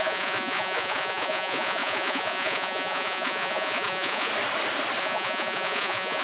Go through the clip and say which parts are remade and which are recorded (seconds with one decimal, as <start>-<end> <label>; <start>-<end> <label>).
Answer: 0.0-4.3 remade; 4.3-5.0 recorded; 5.0-6.2 remade